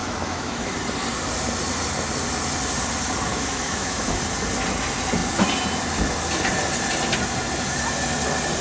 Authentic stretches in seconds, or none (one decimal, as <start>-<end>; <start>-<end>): 0.7-3.3; 4.2-8.6